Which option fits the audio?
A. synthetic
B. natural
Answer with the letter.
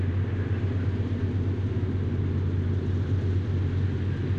B